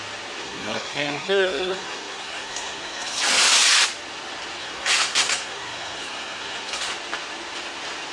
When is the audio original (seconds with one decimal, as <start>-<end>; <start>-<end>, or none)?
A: 0.0-0.4; 3.2-4.6; 6.9-8.1